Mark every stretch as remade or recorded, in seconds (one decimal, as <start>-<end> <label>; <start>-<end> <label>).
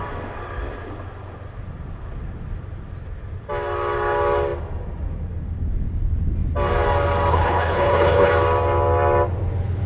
0.0-7.3 recorded; 7.3-8.3 remade; 8.3-9.9 recorded